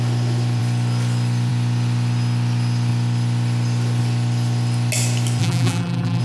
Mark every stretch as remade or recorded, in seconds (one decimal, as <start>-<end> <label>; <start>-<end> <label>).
0.0-5.4 recorded; 5.4-6.2 remade